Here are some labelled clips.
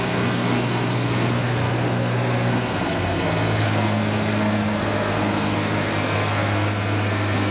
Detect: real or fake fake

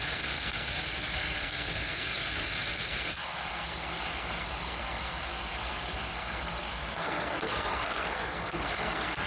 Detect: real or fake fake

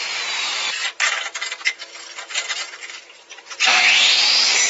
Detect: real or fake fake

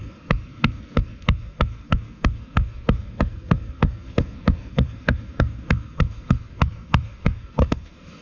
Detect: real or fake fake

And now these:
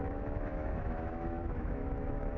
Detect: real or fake fake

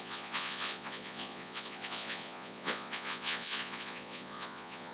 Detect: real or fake fake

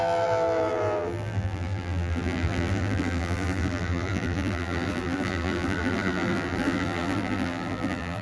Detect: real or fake fake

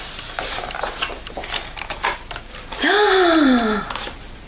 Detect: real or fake real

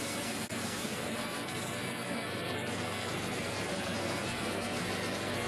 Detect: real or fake fake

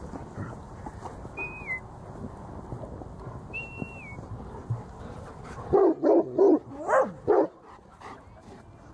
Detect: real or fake real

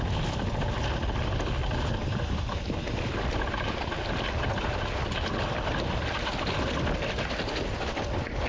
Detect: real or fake real